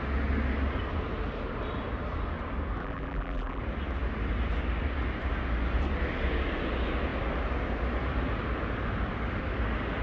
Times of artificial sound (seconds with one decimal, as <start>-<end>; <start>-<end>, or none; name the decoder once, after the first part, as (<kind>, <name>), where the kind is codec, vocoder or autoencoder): 2.8-3.6 (vocoder, BigVGAN v2)